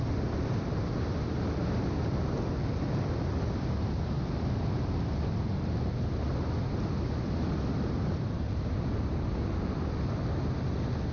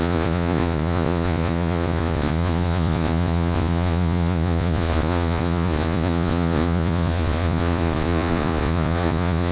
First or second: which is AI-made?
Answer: second